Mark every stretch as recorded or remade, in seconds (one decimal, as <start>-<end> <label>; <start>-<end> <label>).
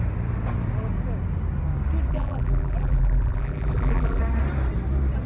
0.0-2.1 recorded; 2.1-4.2 remade; 4.2-5.3 recorded